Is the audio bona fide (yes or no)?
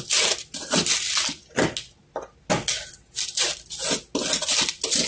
yes